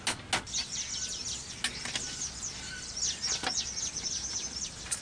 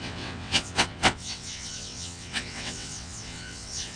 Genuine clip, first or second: first